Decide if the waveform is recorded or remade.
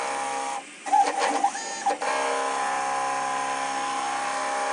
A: recorded